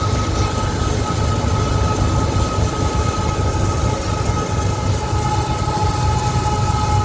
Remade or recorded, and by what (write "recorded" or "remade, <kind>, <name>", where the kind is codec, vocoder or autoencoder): recorded